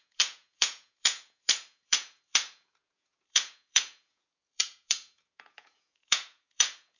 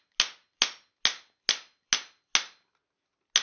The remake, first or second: first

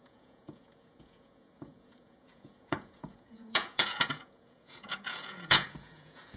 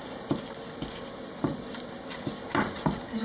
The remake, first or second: first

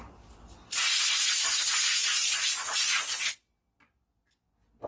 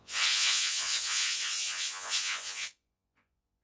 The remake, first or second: second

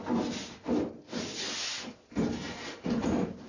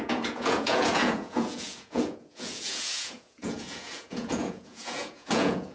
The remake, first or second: second